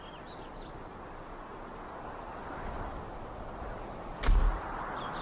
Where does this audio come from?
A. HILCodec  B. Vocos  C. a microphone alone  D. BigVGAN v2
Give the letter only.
C